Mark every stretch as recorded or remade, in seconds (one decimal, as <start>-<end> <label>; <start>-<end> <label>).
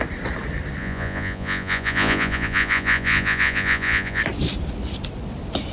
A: 0.0-0.8 recorded; 0.8-4.2 remade; 4.2-5.7 recorded